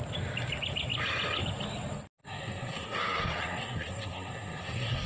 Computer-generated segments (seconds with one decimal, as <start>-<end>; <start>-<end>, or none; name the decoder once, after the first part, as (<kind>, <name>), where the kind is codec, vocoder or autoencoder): 2.2-5.1 (codec, SNAC)